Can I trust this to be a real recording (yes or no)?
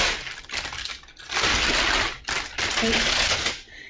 yes